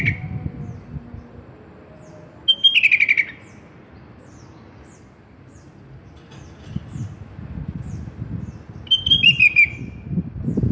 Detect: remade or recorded recorded